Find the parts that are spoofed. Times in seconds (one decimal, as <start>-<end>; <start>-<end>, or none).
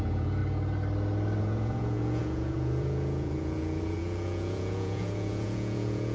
0.0-0.4; 1.4-6.1